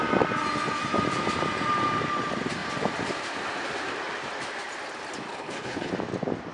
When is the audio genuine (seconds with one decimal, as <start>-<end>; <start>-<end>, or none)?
0.0-5.3; 5.9-6.5